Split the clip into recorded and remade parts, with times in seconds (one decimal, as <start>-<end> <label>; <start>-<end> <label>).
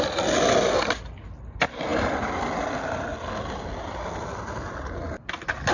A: 0.0-5.7 recorded